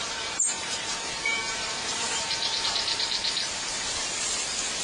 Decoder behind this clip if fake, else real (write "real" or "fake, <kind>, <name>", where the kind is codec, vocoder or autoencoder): fake, vocoder, BigVGAN v2